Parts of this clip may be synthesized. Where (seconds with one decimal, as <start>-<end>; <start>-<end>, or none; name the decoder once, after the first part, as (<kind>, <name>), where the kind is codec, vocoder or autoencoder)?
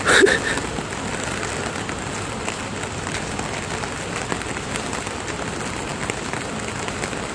none